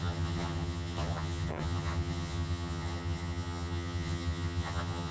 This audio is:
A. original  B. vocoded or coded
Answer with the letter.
B